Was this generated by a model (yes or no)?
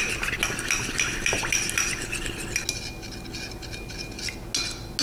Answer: no